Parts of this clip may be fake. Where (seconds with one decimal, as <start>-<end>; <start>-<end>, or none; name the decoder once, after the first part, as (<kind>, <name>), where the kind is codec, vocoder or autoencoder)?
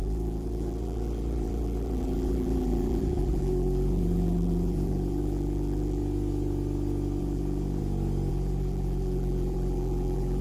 0.0-6.0 (vocoder, BigVGAN v2); 7.2-7.8; 8.3-10.4